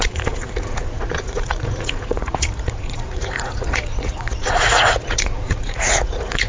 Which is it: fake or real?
fake